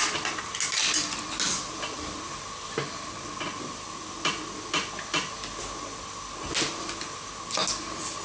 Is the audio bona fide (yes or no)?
yes